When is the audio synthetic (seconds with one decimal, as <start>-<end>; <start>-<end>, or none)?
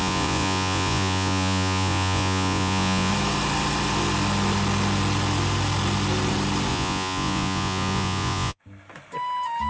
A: 0.0-3.1; 6.7-8.6